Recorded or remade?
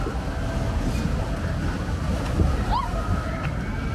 recorded